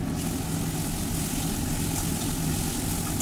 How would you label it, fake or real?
real